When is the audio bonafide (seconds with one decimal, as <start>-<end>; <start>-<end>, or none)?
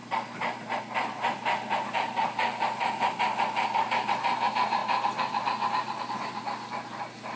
0.0-7.4